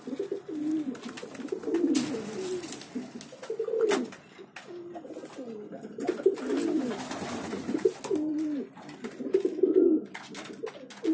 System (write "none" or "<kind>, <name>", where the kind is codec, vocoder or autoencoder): none